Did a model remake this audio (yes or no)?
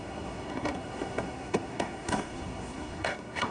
yes